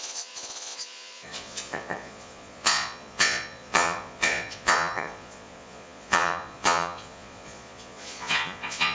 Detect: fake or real fake